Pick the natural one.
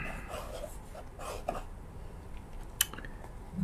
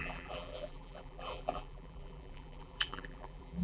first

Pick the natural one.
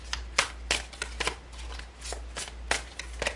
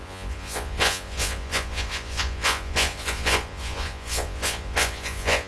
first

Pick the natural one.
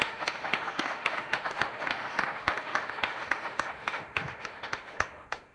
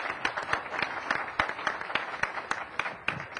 second